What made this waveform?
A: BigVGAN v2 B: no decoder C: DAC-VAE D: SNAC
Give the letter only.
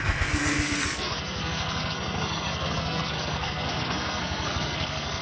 D